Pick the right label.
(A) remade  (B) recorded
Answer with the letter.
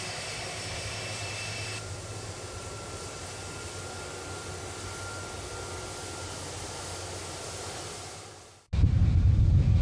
B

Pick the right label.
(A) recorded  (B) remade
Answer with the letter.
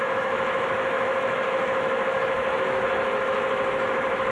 B